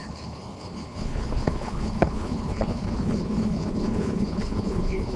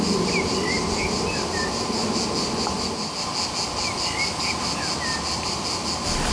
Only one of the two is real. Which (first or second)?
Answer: second